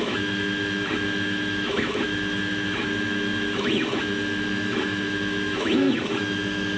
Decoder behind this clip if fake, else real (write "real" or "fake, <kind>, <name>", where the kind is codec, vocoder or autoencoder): fake, autoencoder, DAC-VAE